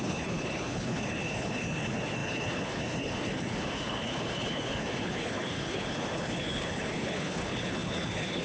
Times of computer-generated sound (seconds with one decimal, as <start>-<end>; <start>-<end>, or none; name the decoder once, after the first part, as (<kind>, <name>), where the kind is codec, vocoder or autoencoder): 0.0-8.4 (codec, HILCodec)